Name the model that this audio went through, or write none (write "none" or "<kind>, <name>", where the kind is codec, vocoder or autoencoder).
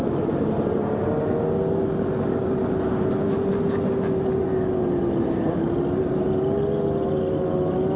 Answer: none